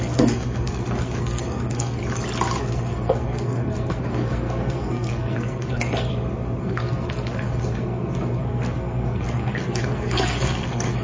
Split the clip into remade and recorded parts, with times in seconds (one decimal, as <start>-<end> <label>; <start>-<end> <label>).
0.0-2.0 remade; 2.0-2.6 recorded; 2.6-6.1 remade; 6.1-6.6 recorded; 6.6-11.0 remade